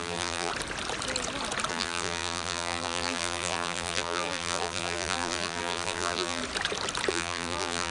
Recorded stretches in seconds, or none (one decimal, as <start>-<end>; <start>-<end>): 0.5-1.7; 6.4-7.1